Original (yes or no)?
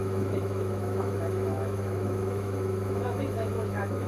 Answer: no